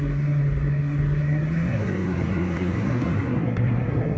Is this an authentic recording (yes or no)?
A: no